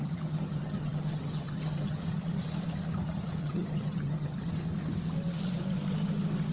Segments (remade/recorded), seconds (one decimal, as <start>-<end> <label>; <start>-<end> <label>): 0.0-2.0 remade; 2.0-3.4 recorded; 3.4-4.4 remade; 4.4-6.5 recorded